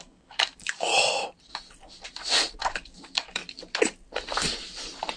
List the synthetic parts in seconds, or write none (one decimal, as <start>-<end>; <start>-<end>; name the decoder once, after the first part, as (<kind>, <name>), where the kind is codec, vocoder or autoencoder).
0.0-0.9 (codec, DAC); 2.6-3.4